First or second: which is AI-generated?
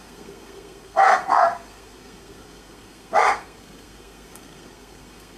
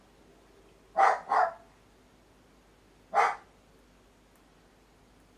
first